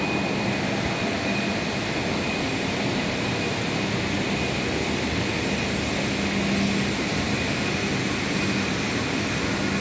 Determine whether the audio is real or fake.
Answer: real